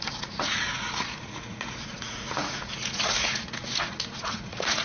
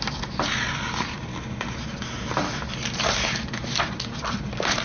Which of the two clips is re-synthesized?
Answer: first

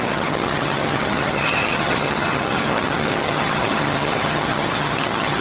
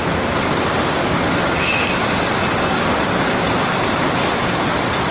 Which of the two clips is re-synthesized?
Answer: first